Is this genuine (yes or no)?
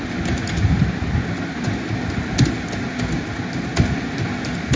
yes